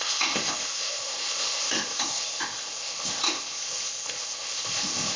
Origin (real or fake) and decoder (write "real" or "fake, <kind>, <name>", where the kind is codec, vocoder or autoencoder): fake, codec, ZipCodec